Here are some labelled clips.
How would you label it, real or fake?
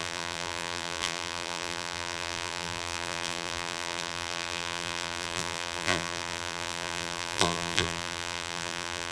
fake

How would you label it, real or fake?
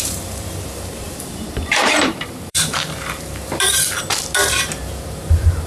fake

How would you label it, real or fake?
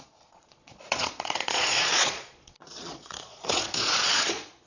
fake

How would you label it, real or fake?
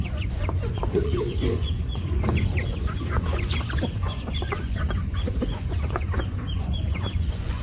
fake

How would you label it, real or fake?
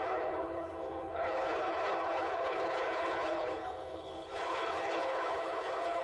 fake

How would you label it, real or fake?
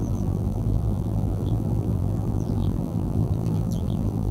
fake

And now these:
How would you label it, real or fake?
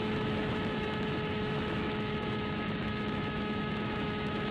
fake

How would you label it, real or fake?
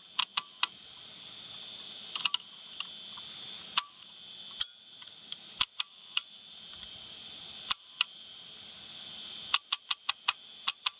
real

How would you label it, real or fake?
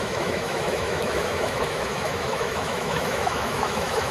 fake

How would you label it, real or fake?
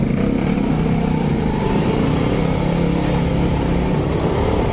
real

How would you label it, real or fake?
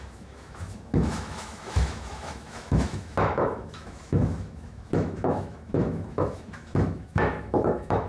fake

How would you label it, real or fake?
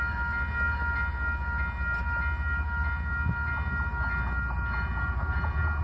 real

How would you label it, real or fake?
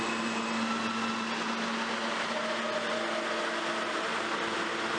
real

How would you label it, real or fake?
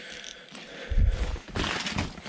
real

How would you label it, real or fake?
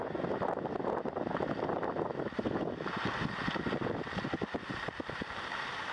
real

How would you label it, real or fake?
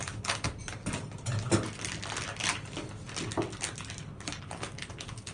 real